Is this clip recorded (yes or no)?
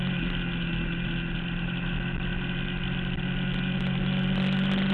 yes